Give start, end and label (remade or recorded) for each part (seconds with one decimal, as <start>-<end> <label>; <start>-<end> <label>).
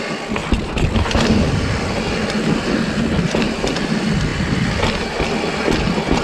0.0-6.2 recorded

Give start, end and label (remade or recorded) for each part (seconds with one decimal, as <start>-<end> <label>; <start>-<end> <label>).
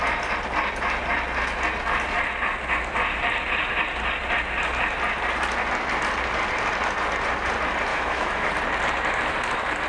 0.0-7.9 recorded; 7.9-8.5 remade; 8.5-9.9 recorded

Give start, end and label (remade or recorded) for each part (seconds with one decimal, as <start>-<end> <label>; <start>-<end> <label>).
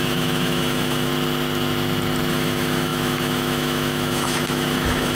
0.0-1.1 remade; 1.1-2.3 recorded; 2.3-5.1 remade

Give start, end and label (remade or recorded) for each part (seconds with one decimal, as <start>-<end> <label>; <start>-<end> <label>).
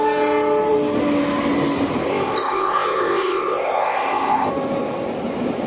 0.0-2.1 recorded; 2.1-4.5 remade; 4.5-5.7 recorded